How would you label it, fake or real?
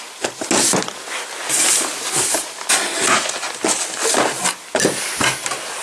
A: real